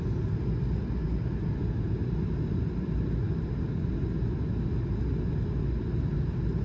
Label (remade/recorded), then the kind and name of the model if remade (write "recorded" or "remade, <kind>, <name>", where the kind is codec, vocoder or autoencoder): recorded